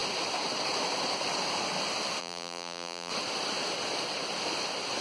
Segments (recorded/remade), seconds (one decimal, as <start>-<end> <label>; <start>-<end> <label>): 0.0-2.2 recorded; 2.2-3.1 remade; 3.1-5.0 recorded